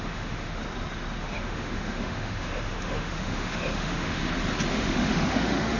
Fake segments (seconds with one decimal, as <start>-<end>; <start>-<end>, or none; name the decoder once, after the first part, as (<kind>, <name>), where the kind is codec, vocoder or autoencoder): 0.0-0.6 (autoencoder, DAC-VAE); 1.2-4.2; 4.7-5.8